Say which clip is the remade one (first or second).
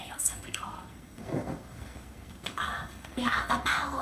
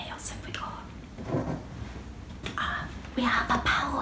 first